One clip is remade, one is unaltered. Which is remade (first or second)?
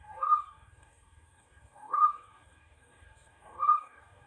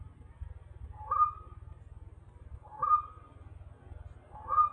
first